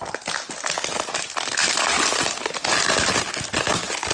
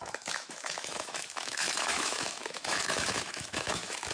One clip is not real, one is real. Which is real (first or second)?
first